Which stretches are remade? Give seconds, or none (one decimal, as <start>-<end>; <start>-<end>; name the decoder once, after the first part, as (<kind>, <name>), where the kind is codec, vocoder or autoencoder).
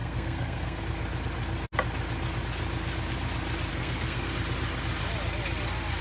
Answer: 0.0-0.8 (codec, SNAC); 3.7-4.3